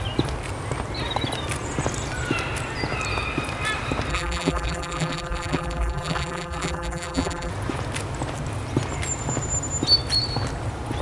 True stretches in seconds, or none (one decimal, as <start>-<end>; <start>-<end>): 0.0-4.1; 7.5-11.0